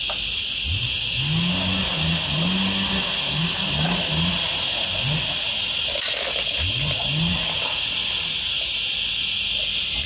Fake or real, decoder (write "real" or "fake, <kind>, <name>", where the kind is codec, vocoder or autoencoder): real